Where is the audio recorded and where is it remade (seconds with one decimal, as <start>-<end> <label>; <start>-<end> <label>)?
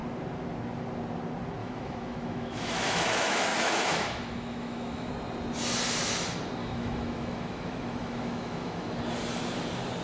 0.0-1.6 recorded; 1.6-5.1 remade; 5.1-6.6 recorded; 6.6-9.0 remade; 9.0-10.0 recorded